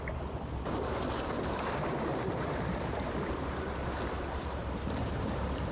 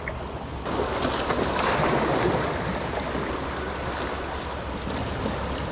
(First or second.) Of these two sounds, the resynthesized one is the first